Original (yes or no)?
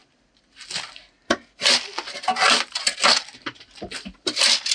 yes